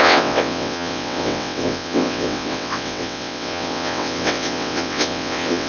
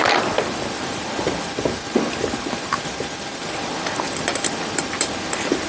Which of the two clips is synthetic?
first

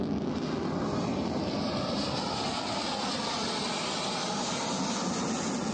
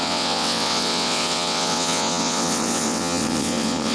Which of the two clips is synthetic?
second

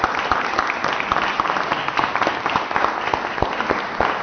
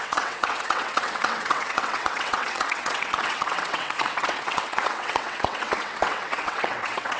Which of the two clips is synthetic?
second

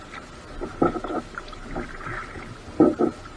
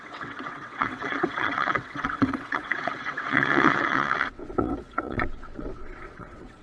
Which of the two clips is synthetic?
second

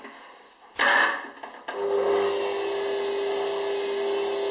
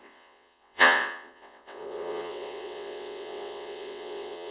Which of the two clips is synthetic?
second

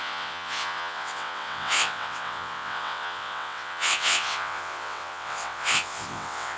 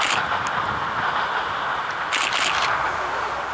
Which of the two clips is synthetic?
first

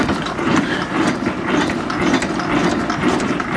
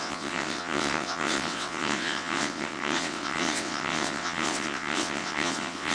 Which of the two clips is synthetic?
second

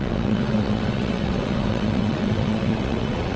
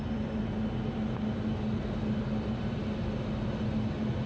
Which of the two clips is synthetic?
first